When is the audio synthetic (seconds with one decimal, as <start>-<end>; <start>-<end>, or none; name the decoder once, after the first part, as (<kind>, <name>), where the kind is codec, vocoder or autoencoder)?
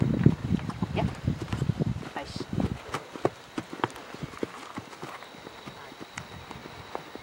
0.4-3.9 (vocoder, BigVGAN v2)